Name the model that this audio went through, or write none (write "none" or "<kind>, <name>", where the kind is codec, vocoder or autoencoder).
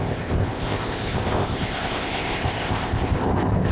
codec, ZipCodec